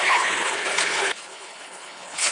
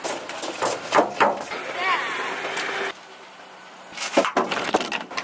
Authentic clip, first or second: second